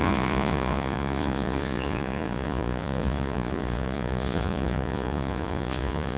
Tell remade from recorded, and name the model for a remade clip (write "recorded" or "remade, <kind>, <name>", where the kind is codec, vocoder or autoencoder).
remade, vocoder, Vocos